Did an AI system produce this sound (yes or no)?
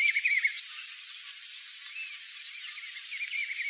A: no